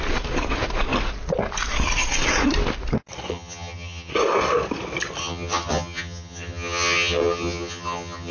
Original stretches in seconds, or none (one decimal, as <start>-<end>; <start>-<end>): 0.0-3.3; 4.1-5.2